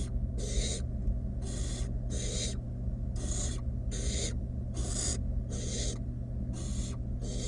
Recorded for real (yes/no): yes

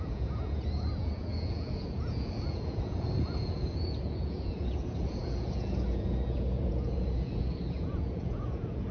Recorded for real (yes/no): no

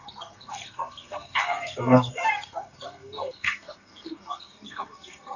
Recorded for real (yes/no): no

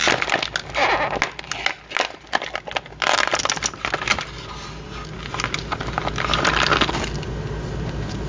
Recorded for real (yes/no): yes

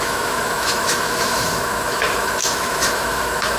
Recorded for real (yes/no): no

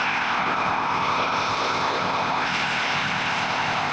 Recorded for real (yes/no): no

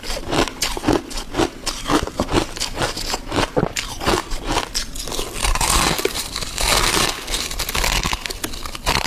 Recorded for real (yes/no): yes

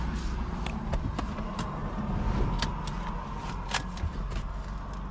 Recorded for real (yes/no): yes